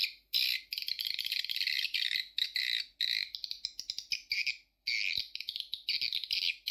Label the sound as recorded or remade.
recorded